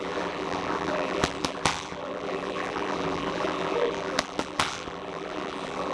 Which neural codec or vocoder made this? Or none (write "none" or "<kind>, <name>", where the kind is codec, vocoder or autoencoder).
vocoder, BigVGAN v2